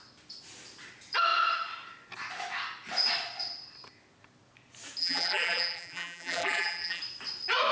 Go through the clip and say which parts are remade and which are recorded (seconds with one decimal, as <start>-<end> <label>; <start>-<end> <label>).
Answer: 0.0-5.0 recorded; 5.0-7.0 remade; 7.0-7.7 recorded